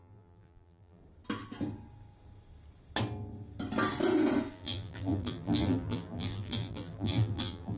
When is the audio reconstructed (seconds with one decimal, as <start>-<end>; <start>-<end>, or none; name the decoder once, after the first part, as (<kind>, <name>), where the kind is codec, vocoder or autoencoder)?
0.0-1.0 (vocoder, BigVGAN v2); 4.5-7.8